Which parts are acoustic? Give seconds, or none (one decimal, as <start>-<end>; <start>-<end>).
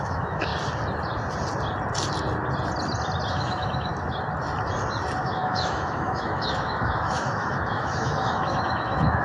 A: 0.5-3.3; 3.9-5.2